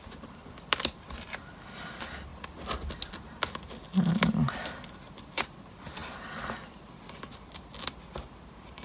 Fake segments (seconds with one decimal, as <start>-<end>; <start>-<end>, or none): none